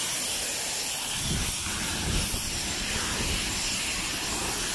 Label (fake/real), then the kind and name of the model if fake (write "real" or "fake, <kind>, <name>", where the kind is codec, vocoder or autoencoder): real